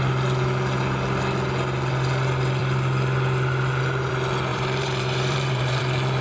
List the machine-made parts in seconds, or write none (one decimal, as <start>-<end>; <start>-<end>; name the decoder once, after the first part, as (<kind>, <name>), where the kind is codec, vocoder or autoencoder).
4.5-5.8 (vocoder, BigVGAN v2)